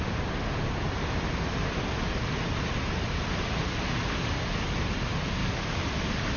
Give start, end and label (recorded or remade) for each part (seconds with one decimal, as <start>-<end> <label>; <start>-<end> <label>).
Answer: 0.0-5.4 recorded; 5.4-5.9 remade; 5.9-6.4 recorded

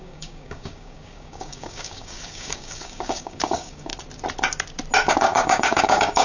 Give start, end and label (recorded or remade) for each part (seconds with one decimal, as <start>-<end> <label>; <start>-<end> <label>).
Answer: 0.0-3.9 remade; 3.9-5.1 recorded; 5.1-6.2 remade

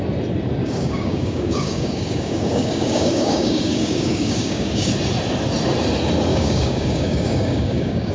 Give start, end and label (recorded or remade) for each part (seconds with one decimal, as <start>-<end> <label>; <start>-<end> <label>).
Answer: 0.0-0.6 recorded; 0.6-4.9 remade; 4.9-6.3 recorded; 6.3-8.1 remade

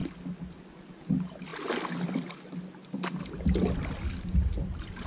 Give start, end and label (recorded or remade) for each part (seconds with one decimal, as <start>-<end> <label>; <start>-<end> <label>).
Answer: 0.0-5.1 recorded

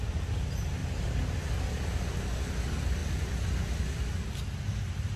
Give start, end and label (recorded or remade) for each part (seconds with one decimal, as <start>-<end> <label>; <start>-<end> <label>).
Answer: 0.0-5.2 recorded

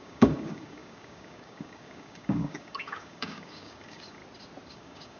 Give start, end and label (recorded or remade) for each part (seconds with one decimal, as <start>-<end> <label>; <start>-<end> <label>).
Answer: 0.0-4.2 remade; 4.2-4.7 recorded; 4.7-5.2 remade